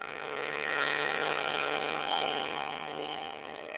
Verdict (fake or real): fake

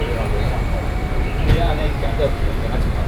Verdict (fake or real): fake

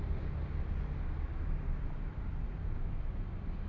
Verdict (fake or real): real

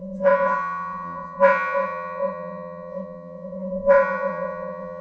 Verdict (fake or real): fake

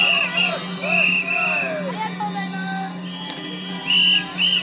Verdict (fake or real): real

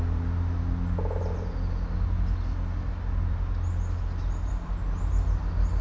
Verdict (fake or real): real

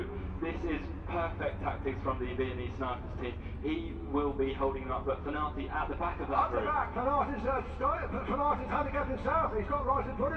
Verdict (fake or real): real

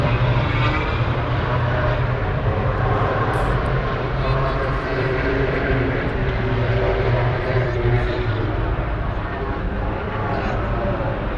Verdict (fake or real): fake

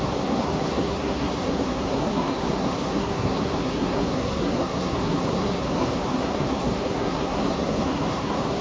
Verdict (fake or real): fake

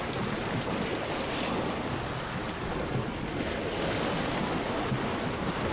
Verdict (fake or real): real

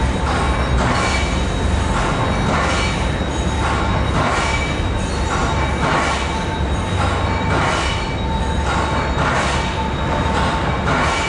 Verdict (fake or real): real